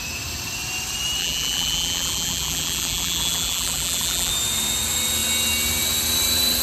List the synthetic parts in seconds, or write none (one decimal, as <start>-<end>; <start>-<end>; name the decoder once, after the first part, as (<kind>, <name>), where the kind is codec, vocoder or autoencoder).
1.2-4.3 (vocoder, BigVGAN v2)